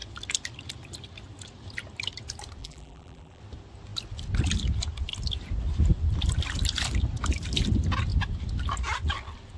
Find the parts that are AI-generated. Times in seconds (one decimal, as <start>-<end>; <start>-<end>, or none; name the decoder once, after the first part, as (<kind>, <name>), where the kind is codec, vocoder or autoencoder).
2.6-3.4 (vocoder, BigVGAN v2)